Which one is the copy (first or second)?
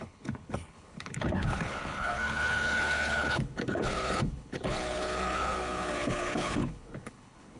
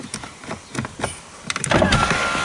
first